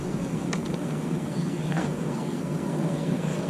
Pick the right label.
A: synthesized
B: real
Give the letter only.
A